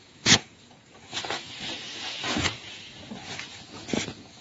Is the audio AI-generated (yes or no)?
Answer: yes